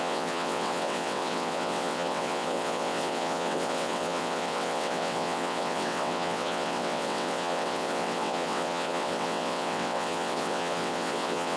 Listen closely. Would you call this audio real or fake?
fake